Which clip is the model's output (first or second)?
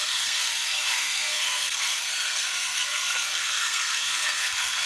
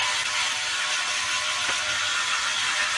first